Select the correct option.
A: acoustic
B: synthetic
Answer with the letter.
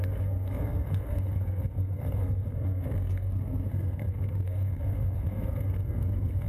B